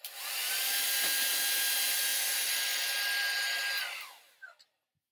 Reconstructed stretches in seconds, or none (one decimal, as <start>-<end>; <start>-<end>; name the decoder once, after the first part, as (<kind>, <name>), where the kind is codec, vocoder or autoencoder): none